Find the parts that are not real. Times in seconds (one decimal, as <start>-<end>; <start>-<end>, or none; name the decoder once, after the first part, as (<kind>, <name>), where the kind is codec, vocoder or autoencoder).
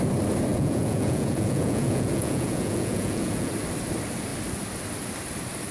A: 0.5-3.5 (vocoder, Vocos)